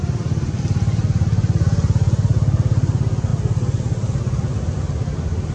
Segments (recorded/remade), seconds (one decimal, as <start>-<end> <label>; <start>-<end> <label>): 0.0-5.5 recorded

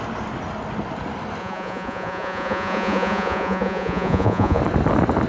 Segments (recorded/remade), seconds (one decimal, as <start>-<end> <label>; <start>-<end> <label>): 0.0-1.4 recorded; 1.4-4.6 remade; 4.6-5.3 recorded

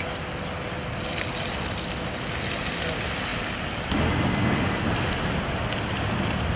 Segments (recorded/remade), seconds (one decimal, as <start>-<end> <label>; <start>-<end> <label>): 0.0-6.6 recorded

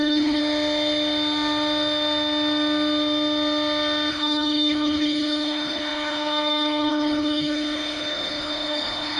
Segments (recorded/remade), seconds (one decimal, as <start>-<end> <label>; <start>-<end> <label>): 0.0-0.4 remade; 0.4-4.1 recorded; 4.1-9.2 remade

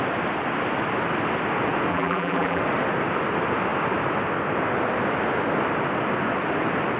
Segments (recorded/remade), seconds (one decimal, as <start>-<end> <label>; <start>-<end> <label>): 0.0-1.9 recorded; 1.9-2.6 remade; 2.6-7.0 recorded